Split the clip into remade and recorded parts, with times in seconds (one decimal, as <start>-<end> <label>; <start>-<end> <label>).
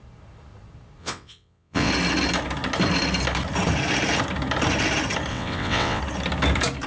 0.0-1.0 recorded; 1.0-1.9 remade; 1.9-5.3 recorded; 5.3-6.0 remade; 6.0-6.9 recorded